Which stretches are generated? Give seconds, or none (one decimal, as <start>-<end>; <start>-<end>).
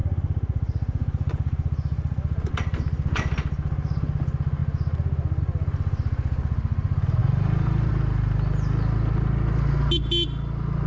0.0-2.5; 7.2-7.9